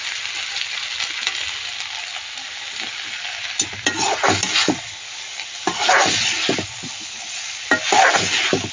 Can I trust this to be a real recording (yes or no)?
yes